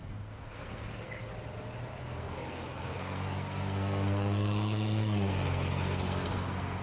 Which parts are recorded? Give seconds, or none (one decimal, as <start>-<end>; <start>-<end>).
1.3-2.0